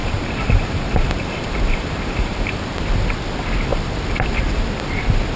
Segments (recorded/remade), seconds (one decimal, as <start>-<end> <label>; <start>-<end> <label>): 0.0-2.6 remade; 2.6-5.4 recorded